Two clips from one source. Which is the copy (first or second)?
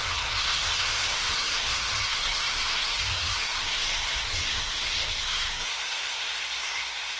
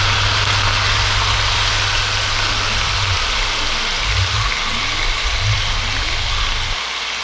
first